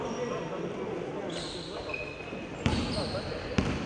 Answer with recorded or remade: recorded